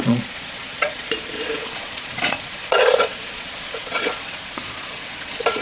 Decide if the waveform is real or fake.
fake